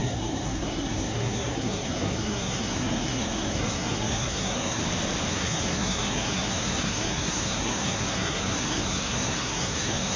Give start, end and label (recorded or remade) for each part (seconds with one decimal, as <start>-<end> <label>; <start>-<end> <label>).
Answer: 0.0-4.8 remade; 4.8-5.3 recorded; 5.3-10.2 remade